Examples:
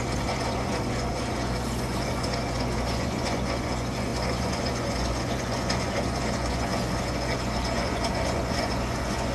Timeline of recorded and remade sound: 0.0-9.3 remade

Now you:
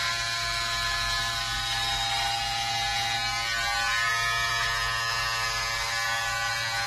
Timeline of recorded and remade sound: 0.0-6.9 recorded

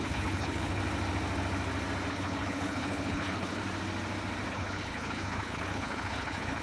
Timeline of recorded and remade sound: 0.0-0.8 remade; 0.8-2.1 recorded; 2.1-3.6 remade; 3.6-4.5 recorded; 4.5-6.6 remade

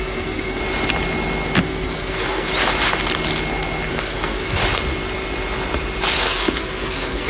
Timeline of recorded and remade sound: 0.0-0.6 remade; 0.6-1.6 recorded; 1.6-2.5 remade; 2.5-3.9 recorded; 3.9-4.6 remade; 4.6-6.2 recorded; 6.2-7.3 remade

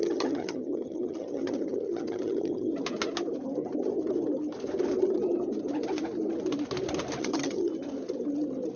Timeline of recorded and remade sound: 0.0-2.7 remade; 2.7-7.2 recorded; 7.2-7.7 remade; 7.7-8.8 recorded